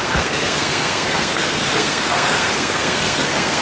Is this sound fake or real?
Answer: fake